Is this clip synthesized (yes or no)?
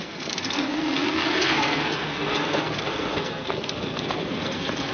yes